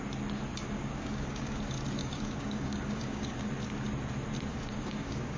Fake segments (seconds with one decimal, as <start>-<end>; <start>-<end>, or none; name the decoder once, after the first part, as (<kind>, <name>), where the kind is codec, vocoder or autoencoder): 0.6-1.6 (codec, DAC); 2.0-3.5; 4.5-5.4